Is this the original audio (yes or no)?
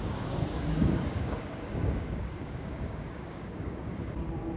no